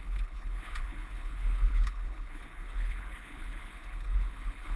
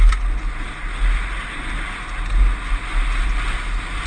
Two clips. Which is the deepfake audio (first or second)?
first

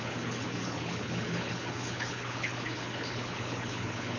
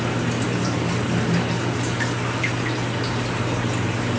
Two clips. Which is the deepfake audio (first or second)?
first